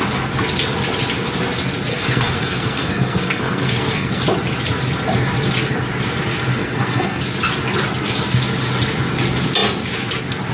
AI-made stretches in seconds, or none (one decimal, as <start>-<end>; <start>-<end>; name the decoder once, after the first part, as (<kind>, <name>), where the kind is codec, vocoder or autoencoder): 1.9-4.2 (codec, SNAC); 6.6-7.2